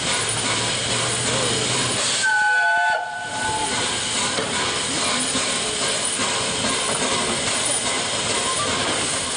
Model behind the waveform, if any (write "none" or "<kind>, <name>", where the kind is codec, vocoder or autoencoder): none